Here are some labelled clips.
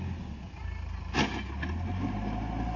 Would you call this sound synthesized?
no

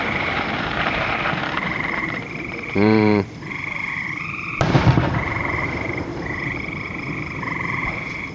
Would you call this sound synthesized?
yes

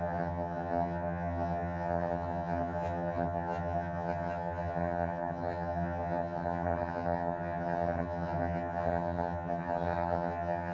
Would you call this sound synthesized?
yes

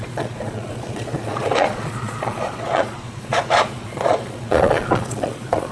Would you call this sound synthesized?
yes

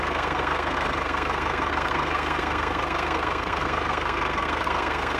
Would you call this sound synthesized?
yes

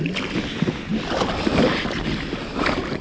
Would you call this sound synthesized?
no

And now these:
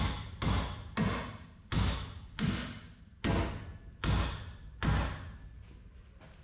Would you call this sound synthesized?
no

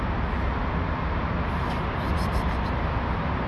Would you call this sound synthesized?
no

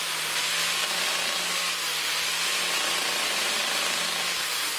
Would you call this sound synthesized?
no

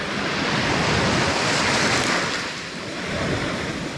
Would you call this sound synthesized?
no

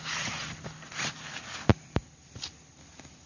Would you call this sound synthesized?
yes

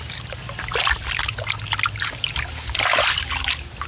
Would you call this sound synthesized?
no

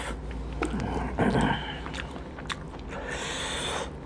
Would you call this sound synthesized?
no